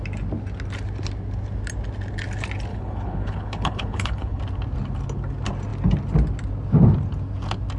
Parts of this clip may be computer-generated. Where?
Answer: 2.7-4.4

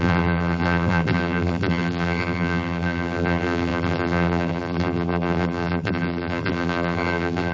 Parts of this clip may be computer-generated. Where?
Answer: 0.0-7.5

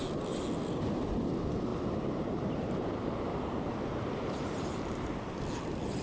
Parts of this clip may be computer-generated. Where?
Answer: 1.7-5.3

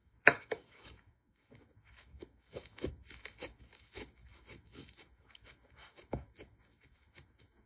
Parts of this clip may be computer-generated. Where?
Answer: 0.0-7.7

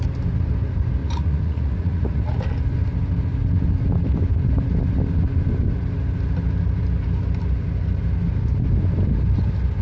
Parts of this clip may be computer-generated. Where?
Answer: 1.0-2.5

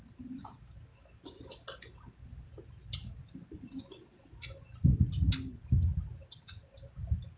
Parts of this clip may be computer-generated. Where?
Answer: none